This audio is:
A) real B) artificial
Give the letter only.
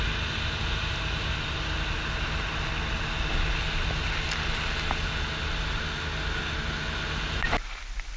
A